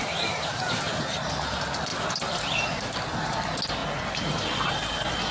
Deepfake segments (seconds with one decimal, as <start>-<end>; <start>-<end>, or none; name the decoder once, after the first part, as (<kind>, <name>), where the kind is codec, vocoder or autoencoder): none